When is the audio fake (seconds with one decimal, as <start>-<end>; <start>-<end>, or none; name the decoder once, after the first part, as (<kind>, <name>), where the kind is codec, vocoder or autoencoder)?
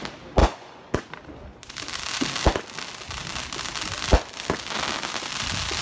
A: 0.4-1.1 (vocoder, Vocos)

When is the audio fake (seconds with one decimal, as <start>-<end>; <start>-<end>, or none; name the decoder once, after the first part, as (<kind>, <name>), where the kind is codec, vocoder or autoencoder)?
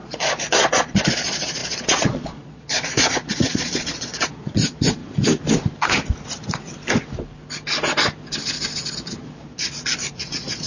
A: 0.0-5.0 (vocoder, Vocos); 8.8-10.7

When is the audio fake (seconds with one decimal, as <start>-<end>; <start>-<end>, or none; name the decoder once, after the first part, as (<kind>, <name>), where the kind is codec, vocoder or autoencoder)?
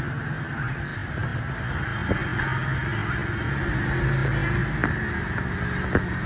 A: none